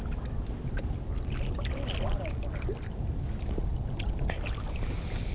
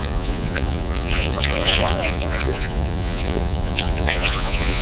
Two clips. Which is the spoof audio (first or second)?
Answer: second